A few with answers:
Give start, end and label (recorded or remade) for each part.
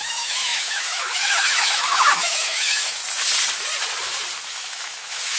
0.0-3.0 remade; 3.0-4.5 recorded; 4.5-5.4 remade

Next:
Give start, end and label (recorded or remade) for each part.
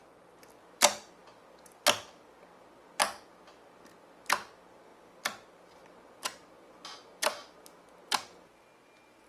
0.0-9.3 recorded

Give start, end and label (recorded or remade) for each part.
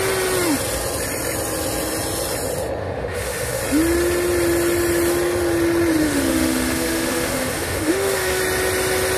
0.0-2.8 recorded; 2.8-3.6 remade; 3.6-6.0 recorded; 6.0-8.4 remade; 8.4-9.2 recorded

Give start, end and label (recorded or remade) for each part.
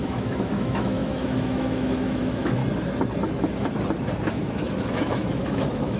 0.0-2.6 remade; 2.6-4.3 recorded; 4.3-6.0 remade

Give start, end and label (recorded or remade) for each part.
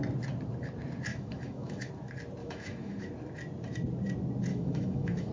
0.0-1.1 recorded; 1.1-1.9 remade; 1.9-2.4 recorded; 2.4-3.1 remade; 3.1-4.5 recorded; 4.5-5.3 remade